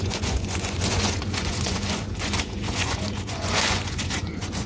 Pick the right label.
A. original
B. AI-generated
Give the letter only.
B